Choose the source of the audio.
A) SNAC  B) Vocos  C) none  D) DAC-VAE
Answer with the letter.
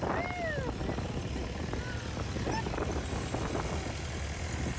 C